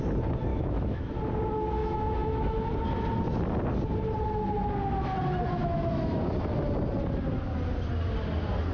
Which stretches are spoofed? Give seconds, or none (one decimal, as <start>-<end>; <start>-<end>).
0.5-1.1; 1.8-2.7; 5.6-6.2